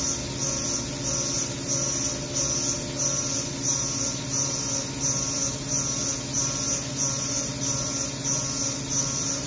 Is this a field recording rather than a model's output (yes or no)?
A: yes